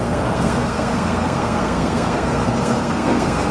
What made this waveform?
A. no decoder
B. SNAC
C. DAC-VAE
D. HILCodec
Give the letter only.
B